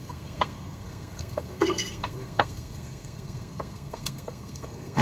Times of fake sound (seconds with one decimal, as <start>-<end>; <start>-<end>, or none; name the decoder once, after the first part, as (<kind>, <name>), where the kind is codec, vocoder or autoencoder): 0.0-5.0 (codec, SNAC)